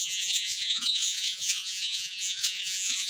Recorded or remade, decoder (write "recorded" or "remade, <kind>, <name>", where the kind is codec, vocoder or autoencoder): remade, vocoder, Vocos